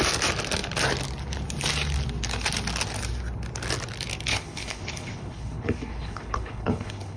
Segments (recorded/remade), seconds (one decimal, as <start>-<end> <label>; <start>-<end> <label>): 0.0-4.3 recorded; 4.3-7.2 remade